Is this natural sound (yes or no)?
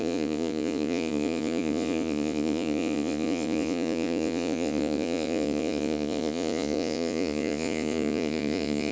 no